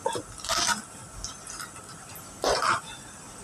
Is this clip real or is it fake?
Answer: real